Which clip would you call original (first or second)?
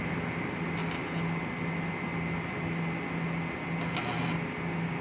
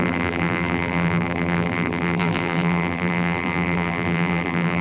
first